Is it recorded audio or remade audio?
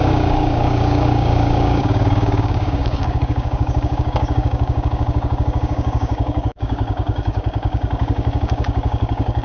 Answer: remade